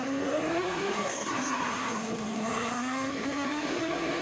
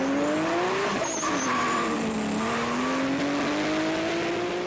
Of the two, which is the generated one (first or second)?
first